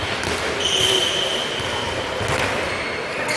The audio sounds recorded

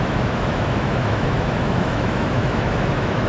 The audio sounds remade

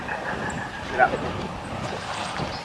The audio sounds remade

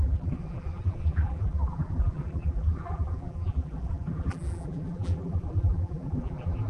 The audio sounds remade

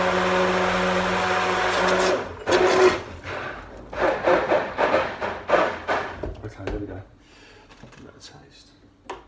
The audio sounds recorded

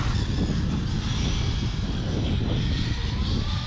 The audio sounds recorded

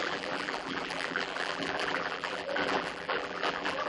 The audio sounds remade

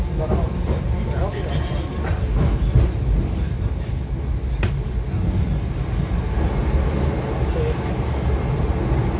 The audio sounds recorded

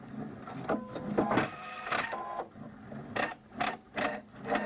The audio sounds recorded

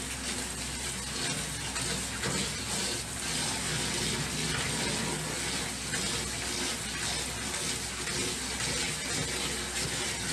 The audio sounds recorded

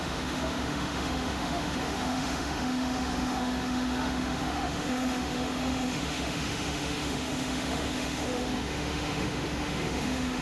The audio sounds remade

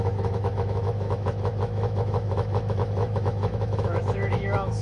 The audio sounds remade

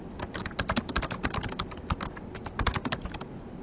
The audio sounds recorded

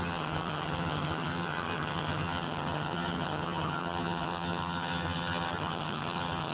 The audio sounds remade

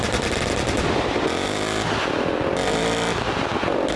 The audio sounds recorded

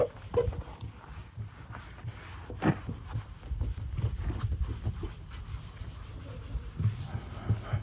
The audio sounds recorded